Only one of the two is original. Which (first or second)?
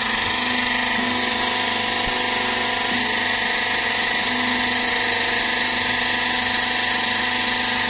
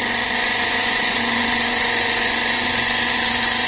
first